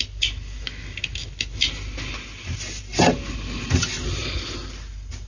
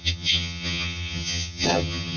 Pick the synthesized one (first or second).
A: second